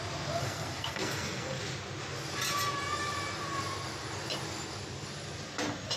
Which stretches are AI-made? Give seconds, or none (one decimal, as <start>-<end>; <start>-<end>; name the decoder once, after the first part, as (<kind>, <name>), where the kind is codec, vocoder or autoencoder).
0.4-1.6 (codec, SNAC)